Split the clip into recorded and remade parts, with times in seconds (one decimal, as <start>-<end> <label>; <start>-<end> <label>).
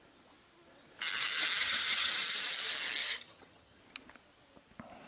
0.0-1.6 recorded; 1.6-2.1 remade; 2.1-3.0 recorded; 3.0-3.8 remade; 3.8-5.1 recorded